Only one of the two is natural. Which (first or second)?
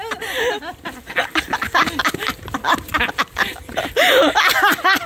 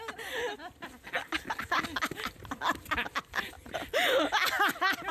second